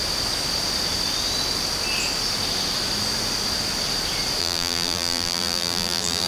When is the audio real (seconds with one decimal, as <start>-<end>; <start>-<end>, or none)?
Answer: 0.0-4.4